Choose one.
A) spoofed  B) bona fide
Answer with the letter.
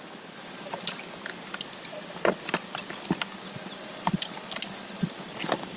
B